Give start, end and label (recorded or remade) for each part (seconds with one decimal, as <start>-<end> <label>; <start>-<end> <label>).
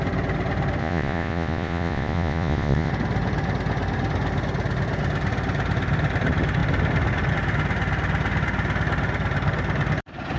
0.0-0.8 recorded; 0.8-2.9 remade; 2.9-10.4 recorded